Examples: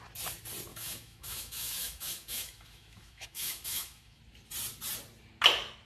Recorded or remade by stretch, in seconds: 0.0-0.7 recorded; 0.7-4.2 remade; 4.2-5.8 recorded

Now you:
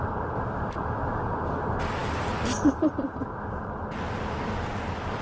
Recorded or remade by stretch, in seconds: 0.0-5.2 recorded

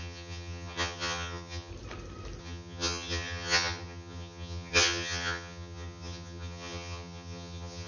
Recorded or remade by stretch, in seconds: 0.0-1.7 remade; 1.7-2.4 recorded; 2.4-7.9 remade

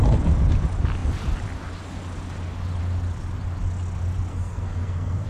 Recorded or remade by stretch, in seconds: 0.0-4.3 recorded; 4.3-5.3 remade

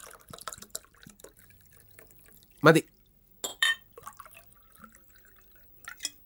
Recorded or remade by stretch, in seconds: 0.0-2.8 remade; 2.8-3.5 recorded; 3.5-4.0 remade; 4.0-6.3 recorded